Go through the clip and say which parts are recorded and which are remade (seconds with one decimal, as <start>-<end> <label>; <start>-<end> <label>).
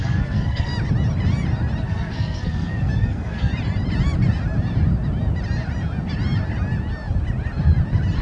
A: 0.0-0.7 remade; 0.7-1.8 recorded; 1.8-3.5 remade; 3.5-8.2 recorded